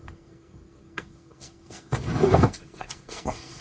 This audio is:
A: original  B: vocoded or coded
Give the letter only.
B